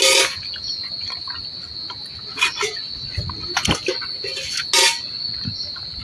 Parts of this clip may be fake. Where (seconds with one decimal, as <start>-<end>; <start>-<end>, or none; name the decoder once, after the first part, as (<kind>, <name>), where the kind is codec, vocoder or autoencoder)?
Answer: none